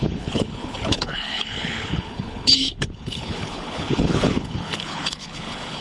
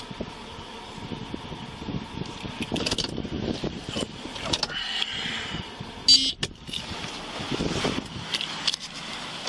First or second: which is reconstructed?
first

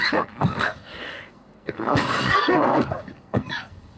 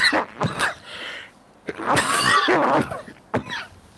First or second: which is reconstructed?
first